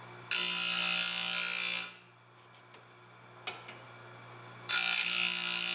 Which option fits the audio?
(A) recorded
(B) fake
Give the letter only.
A